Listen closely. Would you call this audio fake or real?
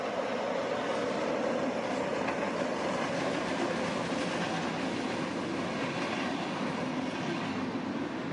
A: real